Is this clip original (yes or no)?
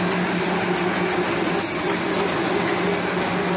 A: yes